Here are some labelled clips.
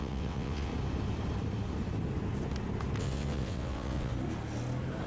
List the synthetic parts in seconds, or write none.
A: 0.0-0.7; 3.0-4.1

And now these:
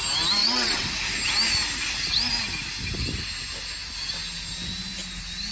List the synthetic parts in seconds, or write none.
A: 0.4-0.9